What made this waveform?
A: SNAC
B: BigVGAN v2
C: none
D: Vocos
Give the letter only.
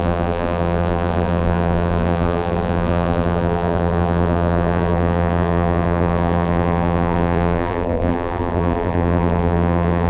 B